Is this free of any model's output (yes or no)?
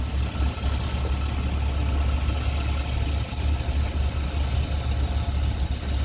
yes